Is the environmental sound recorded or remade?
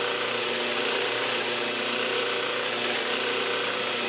recorded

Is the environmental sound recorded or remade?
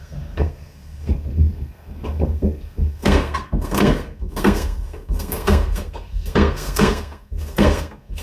remade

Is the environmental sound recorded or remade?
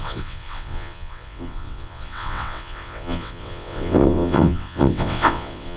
remade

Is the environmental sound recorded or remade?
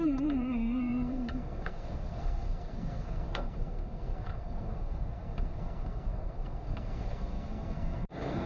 remade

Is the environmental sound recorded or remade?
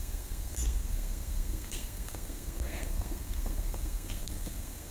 remade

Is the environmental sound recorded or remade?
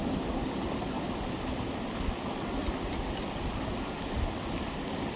recorded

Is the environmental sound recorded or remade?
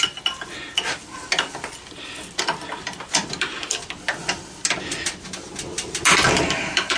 recorded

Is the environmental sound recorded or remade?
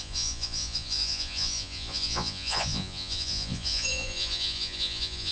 remade